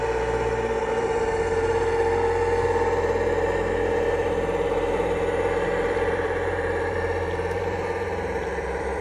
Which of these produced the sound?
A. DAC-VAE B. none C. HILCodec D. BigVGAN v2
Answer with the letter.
D